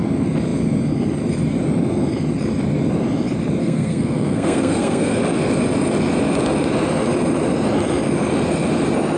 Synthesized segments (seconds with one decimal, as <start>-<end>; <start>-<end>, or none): 3.6-5.2